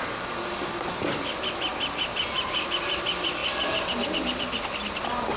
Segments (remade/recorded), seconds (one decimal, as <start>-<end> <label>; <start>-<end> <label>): 0.0-5.4 recorded